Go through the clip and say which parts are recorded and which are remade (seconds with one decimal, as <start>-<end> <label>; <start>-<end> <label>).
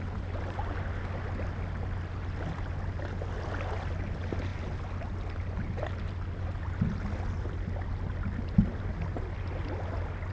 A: 0.0-10.3 recorded